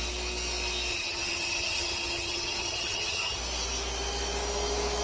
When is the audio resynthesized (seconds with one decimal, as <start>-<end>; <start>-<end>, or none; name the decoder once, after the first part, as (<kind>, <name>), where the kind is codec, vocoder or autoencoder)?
0.9-3.4 (vocoder, HiFi-GAN)